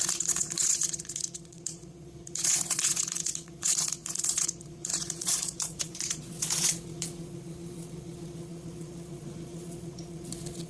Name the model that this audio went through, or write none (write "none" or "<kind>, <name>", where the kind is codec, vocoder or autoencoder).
vocoder, Vocos